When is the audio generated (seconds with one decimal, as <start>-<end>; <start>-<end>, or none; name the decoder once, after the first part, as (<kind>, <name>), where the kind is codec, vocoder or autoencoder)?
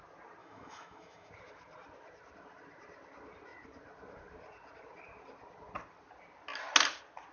0.4-1.3 (autoencoder, DAC-VAE)